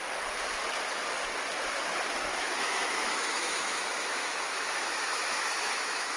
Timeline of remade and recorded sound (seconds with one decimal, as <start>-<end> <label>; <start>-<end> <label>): 0.0-2.3 recorded; 2.3-6.2 remade